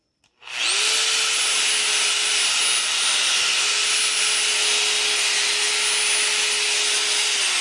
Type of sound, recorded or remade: recorded